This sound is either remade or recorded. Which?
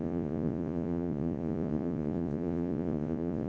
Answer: remade